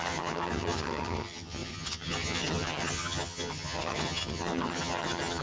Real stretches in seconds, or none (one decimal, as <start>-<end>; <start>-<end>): none